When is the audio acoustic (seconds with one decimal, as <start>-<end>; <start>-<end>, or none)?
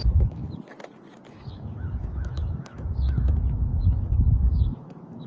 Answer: 0.4-1.3